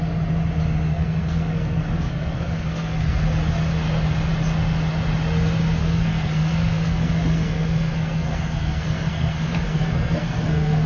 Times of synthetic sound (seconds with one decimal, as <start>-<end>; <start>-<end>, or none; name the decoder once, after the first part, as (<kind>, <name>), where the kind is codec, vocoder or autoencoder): 0.9-3.2 (codec, SNAC); 5.8-10.9

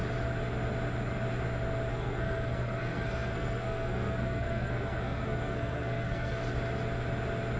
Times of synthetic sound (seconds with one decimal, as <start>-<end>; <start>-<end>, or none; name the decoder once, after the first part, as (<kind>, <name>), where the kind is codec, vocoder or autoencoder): 1.9-6.4 (codec, SNAC)

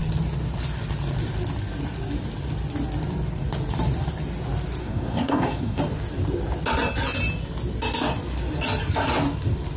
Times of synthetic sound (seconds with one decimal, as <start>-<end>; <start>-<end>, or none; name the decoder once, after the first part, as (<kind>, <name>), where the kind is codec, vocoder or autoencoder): 4.8-5.8 (codec, SNAC)

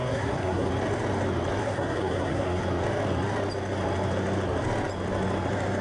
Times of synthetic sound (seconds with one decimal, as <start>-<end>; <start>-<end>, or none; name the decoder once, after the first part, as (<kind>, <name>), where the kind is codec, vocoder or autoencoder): 0.0-0.7 (codec, SNAC); 1.6-2.6

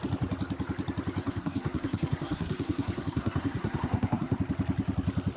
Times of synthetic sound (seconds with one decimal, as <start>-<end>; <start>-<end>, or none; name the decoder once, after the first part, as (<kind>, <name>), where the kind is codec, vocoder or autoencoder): 1.2-4.4 (codec, SNAC)

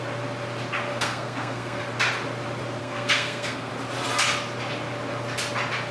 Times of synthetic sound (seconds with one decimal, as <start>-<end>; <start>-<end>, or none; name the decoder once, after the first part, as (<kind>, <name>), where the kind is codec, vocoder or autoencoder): 0.9-1.8 (codec, SNAC); 2.8-3.7